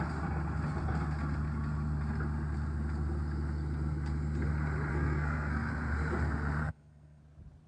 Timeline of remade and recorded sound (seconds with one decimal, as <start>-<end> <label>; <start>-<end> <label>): 0.0-4.9 recorded; 4.9-5.7 remade; 5.7-6.6 recorded; 6.6-7.2 remade; 7.2-7.7 recorded